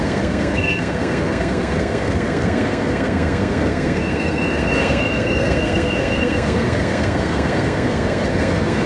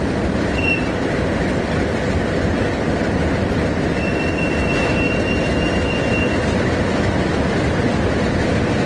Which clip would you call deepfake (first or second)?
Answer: first